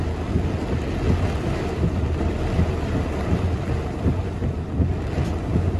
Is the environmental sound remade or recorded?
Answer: recorded